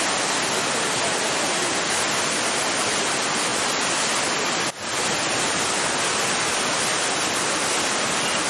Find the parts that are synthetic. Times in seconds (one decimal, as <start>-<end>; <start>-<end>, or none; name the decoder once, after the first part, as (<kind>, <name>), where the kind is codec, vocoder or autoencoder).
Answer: none